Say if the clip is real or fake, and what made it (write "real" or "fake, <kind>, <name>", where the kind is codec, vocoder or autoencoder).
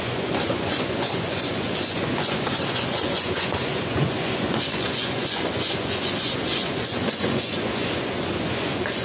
fake, vocoder, Vocos